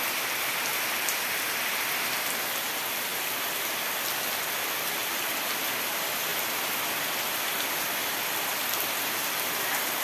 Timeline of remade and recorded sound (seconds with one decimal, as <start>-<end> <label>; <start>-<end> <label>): 0.0-6.3 recorded; 6.3-8.0 remade; 8.0-8.5 recorded; 8.5-10.0 remade